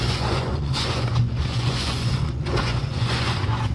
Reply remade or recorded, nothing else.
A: remade